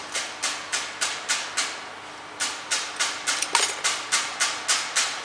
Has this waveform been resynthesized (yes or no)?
no